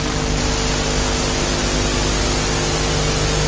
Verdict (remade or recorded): recorded